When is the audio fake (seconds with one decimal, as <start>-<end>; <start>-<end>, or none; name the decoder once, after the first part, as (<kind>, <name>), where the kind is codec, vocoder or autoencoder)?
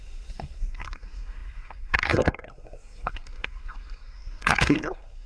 0.0-5.3 (codec, SNAC)